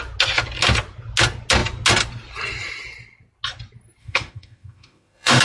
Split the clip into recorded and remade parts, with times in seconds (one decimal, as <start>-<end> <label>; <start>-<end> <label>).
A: 0.0-4.0 recorded; 4.0-5.4 remade